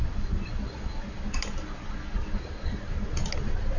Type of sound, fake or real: real